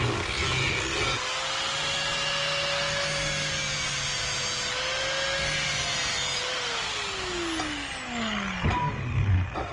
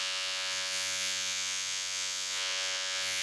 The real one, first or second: first